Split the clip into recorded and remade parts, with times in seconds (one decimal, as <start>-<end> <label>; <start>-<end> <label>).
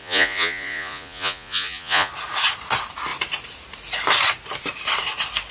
0.0-2.1 remade; 2.1-5.5 recorded